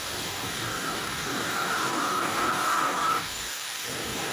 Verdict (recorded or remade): remade